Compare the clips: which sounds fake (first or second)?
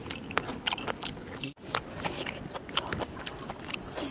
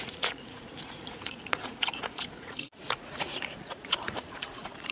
second